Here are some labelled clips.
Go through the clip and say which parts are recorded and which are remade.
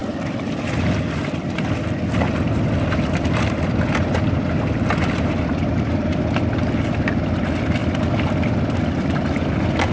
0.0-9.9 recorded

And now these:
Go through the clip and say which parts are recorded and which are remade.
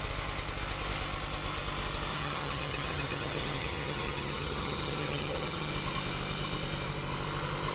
0.0-2.1 recorded; 2.1-5.7 remade; 5.7-7.7 recorded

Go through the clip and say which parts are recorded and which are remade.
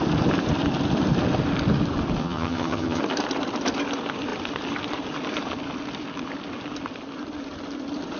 0.0-2.2 recorded; 2.2-3.0 remade; 3.0-8.2 recorded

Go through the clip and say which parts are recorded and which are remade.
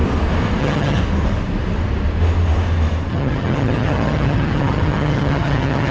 0.0-0.6 recorded; 0.6-1.0 remade; 1.0-3.1 recorded; 3.1-5.9 remade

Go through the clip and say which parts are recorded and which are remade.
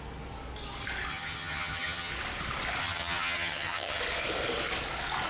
0.0-1.1 recorded; 1.1-2.1 remade; 2.1-2.8 recorded; 2.8-4.0 remade; 4.0-5.3 recorded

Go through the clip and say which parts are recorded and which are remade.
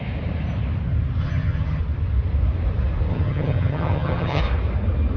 0.0-1.2 recorded; 1.2-1.8 remade; 1.8-3.1 recorded; 3.1-4.4 remade; 4.4-5.2 recorded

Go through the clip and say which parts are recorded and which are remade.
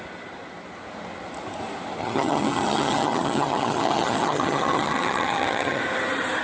0.0-2.0 recorded; 2.0-5.8 remade; 5.8-6.4 recorded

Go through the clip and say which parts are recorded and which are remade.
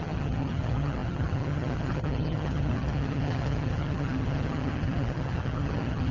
0.0-6.1 remade